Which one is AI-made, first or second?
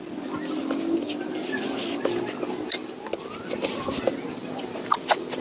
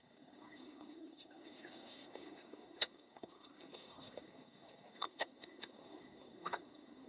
second